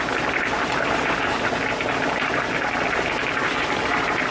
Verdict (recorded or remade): recorded